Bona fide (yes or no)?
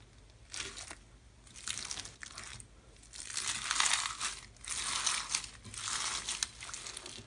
yes